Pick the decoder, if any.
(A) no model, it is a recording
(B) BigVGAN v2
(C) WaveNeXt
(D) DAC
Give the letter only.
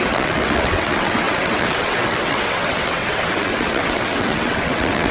C